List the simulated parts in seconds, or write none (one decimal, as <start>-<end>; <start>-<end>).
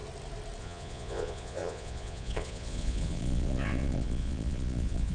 0.6-5.1